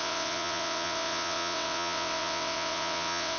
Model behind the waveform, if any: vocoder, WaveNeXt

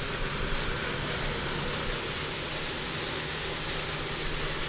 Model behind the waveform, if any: none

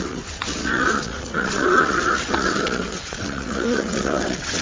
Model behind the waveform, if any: vocoder, WaveNeXt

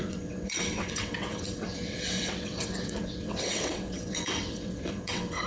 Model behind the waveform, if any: vocoder, WaveNeXt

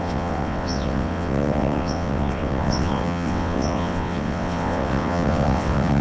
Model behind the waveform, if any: vocoder, WaveNeXt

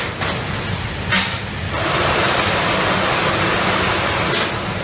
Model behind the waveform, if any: none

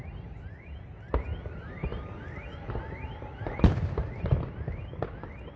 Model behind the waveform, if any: none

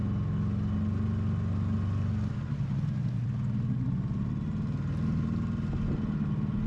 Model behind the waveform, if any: none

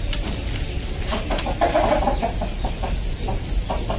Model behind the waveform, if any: none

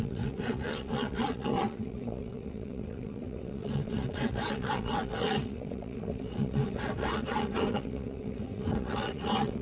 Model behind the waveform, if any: vocoder, WaveNeXt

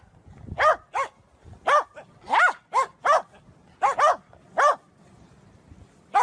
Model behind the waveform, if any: none